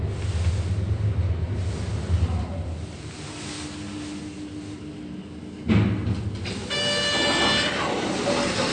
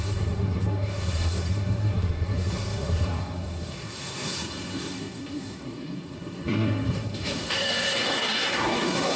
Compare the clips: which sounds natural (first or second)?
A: first